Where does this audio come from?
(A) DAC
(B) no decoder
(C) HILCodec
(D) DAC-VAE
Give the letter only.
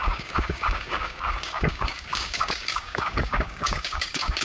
A